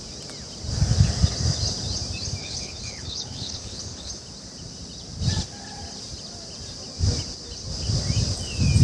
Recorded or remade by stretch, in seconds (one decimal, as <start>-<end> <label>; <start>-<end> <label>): 0.0-2.4 recorded; 2.4-4.1 remade; 4.1-8.8 recorded